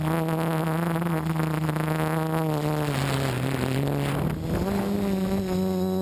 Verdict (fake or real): real